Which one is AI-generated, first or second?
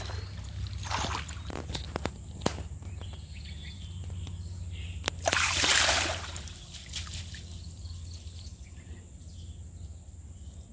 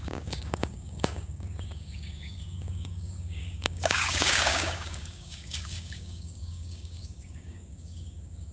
second